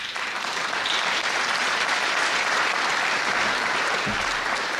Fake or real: fake